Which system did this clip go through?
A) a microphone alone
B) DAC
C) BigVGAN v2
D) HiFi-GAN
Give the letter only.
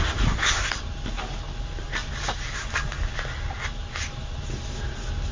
A